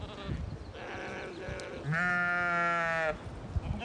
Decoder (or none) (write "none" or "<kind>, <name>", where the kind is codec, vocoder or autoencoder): none